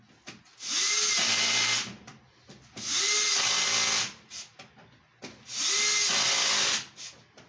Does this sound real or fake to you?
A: real